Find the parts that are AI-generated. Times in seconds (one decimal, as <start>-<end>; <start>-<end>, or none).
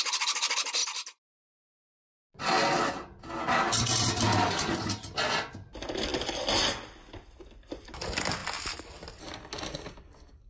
none